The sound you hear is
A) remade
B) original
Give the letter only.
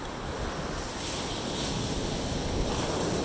B